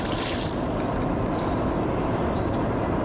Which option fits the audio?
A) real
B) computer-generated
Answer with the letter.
A